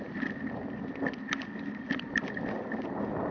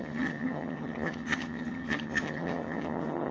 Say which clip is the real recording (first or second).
first